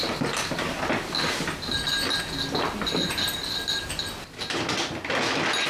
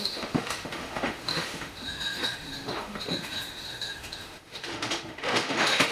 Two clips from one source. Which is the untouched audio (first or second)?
first